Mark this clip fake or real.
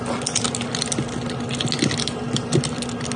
real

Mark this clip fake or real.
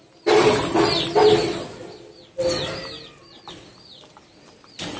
real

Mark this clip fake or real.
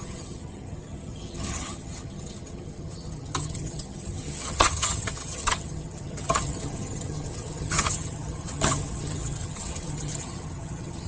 fake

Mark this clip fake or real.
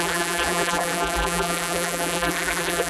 fake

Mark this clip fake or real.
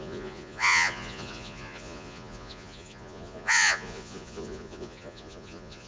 fake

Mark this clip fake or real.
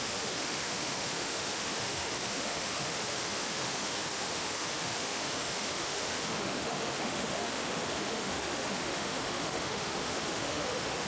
fake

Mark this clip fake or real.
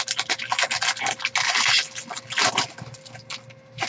real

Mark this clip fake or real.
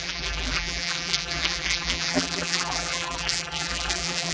fake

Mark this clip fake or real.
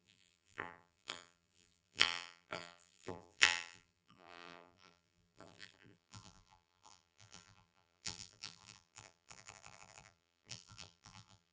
fake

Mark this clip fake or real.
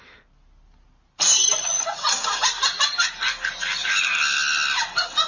real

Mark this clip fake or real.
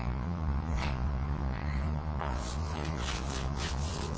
fake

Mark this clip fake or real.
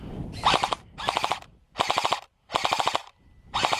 fake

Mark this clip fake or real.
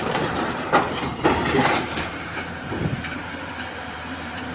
fake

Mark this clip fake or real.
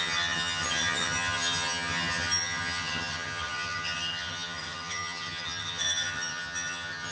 fake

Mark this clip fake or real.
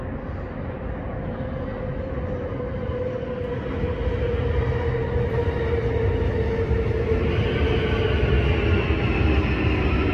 real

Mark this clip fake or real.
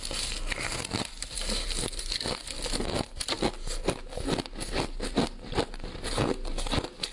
real